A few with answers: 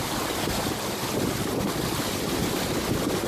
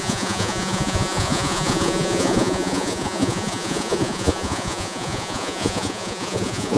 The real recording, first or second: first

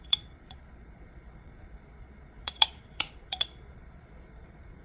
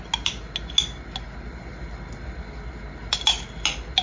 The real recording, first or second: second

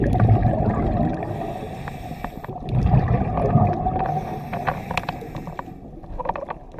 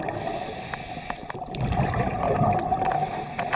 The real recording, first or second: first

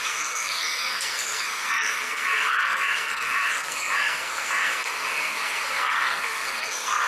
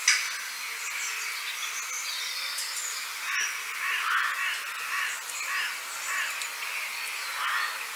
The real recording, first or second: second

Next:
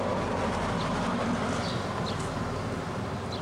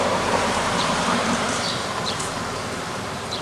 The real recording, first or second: first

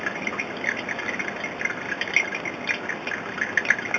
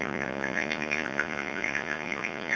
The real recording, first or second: first